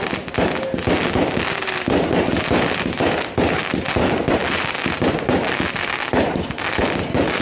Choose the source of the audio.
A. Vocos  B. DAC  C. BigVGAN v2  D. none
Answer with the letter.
D